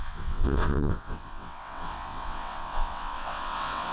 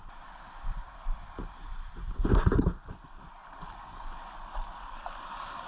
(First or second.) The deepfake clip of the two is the first